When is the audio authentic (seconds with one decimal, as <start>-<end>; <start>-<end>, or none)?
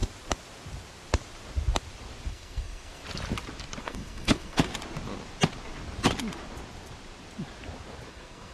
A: 0.0-2.3; 3.0-3.8; 4.7-8.1